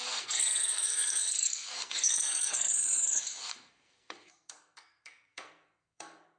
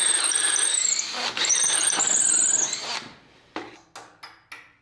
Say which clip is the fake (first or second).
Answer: first